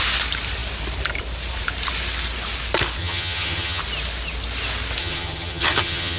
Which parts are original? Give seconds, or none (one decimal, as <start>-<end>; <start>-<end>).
0.0-3.0; 3.8-5.0